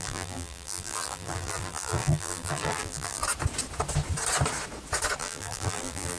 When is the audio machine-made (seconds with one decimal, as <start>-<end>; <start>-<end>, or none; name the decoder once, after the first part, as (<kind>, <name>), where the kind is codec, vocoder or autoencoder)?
0.0-3.2 (vocoder, BigVGAN v2); 5.2-6.2